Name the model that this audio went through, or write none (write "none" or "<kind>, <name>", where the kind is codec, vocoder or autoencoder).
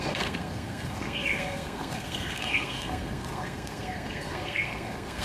codec, SNAC